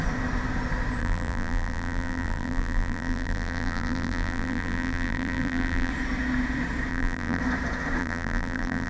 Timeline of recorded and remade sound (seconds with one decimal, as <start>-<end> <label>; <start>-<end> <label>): 0.0-1.0 recorded; 1.0-5.9 remade; 5.9-6.9 recorded; 6.9-7.4 remade; 7.4-8.0 recorded; 8.0-8.9 remade